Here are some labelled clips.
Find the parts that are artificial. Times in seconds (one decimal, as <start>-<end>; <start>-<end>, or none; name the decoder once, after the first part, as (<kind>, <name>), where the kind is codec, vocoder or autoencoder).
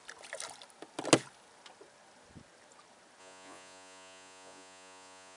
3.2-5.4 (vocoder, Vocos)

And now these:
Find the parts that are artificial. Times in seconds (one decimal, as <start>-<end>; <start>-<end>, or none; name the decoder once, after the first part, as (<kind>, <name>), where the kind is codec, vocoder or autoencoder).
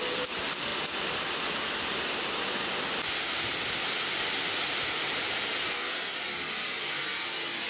none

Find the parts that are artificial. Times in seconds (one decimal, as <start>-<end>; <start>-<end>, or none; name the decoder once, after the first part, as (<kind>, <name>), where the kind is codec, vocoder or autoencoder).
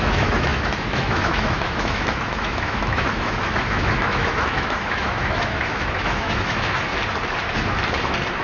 0.0-6.9 (autoencoder, DAC-VAE)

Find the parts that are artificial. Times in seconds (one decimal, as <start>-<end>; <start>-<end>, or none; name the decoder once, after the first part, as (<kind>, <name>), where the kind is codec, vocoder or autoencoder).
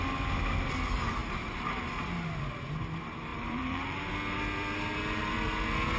1.2-1.9 (vocoder, BigVGAN v2); 3.3-4.1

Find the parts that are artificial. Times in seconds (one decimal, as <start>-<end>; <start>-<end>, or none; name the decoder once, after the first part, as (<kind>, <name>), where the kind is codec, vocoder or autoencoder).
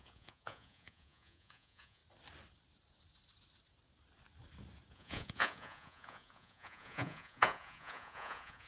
0.0-2.0 (vocoder, Vocos); 4.9-8.7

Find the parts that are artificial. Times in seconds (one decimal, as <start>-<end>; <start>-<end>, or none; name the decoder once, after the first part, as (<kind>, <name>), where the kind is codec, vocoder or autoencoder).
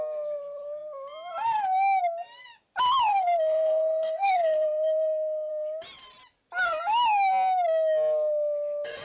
3.1-5.5 (codec, SNAC)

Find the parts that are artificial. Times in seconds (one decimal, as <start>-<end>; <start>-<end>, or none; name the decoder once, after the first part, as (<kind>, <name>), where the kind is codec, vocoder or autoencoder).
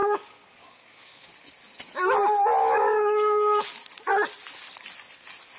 0.0-1.3 (codec, DAC); 2.6-3.6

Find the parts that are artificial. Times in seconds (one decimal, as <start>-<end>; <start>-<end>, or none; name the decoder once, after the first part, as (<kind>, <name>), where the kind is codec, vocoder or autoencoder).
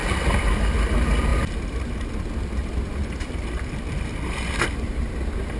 none